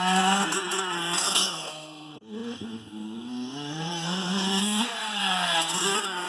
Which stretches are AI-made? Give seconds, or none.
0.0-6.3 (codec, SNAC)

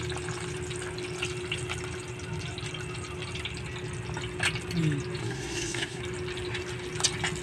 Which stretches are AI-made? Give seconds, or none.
5.2-6.0 (codec, SNAC)

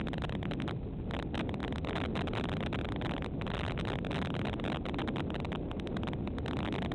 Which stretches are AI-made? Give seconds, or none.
none

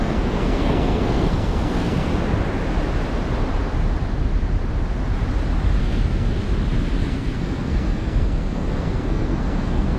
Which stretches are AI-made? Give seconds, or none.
0.0-2.1 (codec, SNAC); 5.8-6.4; 7.0-10.0

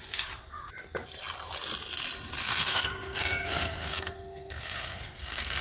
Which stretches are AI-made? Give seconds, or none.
2.4-5.6 (codec, SNAC)

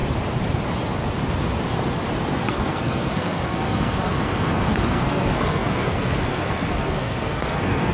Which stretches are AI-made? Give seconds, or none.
2.5-7.9 (codec, SNAC)

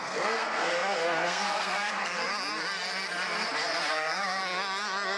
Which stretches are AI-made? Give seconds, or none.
0.0-2.3 (codec, SNAC); 3.9-4.4